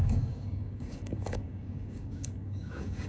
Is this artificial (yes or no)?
yes